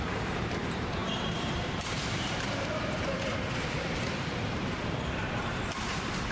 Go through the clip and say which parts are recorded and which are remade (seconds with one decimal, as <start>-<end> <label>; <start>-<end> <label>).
0.0-6.3 remade